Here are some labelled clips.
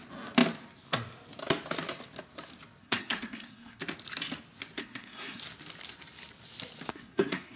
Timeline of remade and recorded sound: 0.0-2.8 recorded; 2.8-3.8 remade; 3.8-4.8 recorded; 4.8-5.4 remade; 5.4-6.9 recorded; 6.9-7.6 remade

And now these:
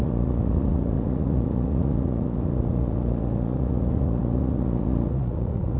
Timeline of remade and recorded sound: 0.0-5.8 remade

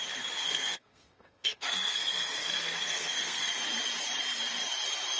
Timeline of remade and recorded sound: 0.0-0.4 recorded; 0.4-3.5 remade; 3.5-5.2 recorded

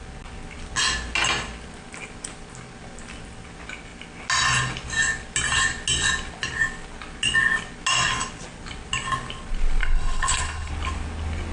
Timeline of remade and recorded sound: 0.0-9.8 recorded; 9.8-10.7 remade; 10.7-11.5 recorded

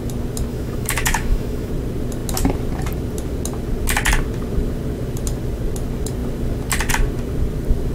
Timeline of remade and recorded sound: 0.0-0.5 recorded; 0.5-1.7 remade; 1.7-7.9 recorded